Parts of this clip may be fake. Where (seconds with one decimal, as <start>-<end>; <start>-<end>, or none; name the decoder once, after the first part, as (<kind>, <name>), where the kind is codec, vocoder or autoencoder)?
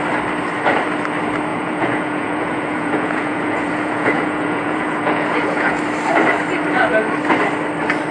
1.5-5.8 (vocoder, Vocos)